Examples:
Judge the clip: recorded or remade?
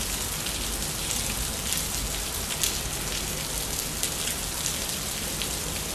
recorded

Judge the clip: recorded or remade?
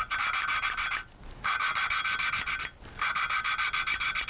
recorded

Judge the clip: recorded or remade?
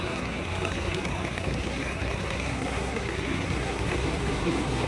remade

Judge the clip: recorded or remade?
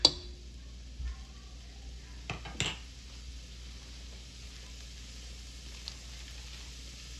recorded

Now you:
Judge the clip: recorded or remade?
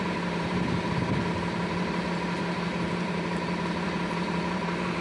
remade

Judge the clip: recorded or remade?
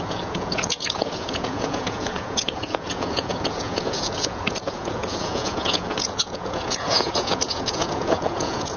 remade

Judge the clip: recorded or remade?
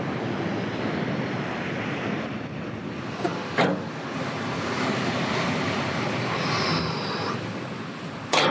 recorded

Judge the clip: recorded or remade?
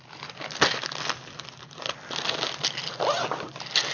recorded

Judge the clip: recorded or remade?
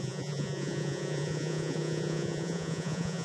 remade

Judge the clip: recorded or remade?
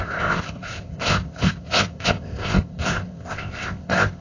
remade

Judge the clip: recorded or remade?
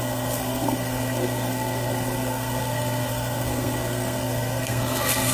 remade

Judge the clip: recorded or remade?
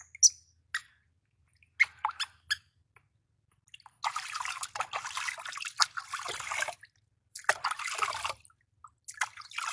recorded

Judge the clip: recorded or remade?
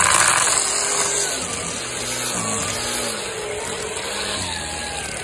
recorded